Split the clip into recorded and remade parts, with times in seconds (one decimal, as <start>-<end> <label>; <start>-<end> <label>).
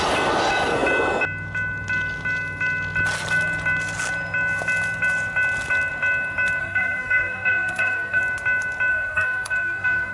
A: 0.0-6.6 recorded; 6.6-8.2 remade; 8.2-8.9 recorded; 8.9-10.1 remade